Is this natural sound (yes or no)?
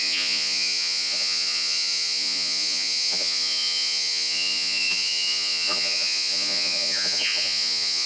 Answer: no